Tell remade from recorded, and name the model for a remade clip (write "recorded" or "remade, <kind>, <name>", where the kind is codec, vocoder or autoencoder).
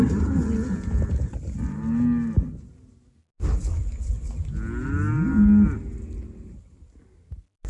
recorded